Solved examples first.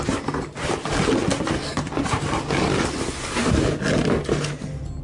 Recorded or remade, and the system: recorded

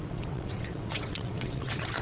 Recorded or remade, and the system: remade, vocoder, WaveNeXt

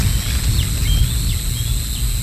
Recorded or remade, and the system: recorded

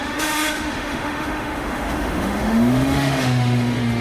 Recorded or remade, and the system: remade, autoencoder, DAC-VAE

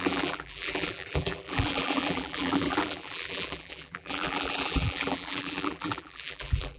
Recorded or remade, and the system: remade, vocoder, BigVGAN v2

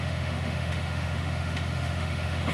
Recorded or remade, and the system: remade, autoencoder, DAC-VAE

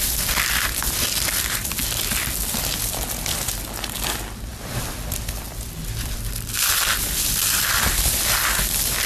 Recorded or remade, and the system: recorded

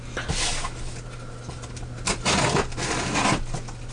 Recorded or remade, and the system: recorded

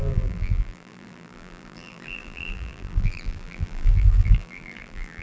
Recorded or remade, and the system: remade, vocoder, BigVGAN v2